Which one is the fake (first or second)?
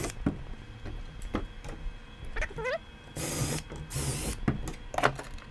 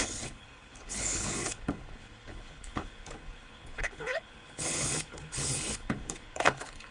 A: second